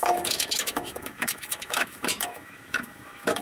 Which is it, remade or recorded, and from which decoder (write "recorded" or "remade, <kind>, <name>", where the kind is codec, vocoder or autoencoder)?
remade, autoencoder, DAC-VAE